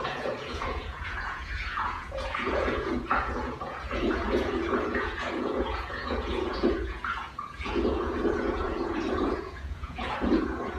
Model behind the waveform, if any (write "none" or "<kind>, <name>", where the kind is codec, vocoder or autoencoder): vocoder, Vocos